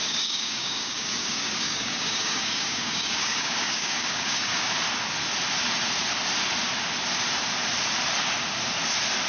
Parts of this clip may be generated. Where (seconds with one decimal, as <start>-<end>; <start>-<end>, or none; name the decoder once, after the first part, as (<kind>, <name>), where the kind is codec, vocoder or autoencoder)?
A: 0.0-4.7 (codec, DAC)